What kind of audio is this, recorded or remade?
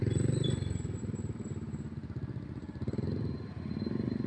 recorded